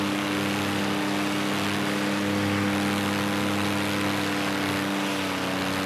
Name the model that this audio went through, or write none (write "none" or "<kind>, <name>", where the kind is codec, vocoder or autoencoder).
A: none